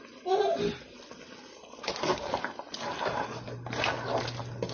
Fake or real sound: real